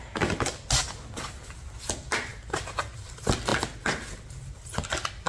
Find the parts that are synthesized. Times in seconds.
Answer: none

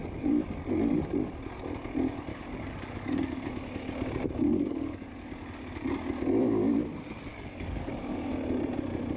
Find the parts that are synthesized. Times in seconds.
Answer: 2.3-3.5 (codec, DAC); 4.5-5.1; 7.3-8.3

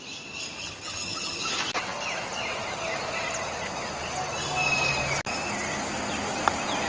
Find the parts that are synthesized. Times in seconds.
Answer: 0.6-1.4 (vocoder, HiFi-GAN)

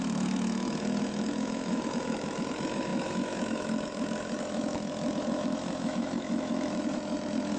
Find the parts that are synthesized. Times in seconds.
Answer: 0.0-7.6 (autoencoder, DAC-VAE)

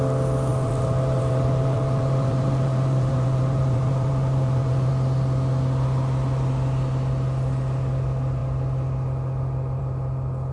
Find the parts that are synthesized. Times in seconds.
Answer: 0.5-4.9 (vocoder, BigVGAN v2)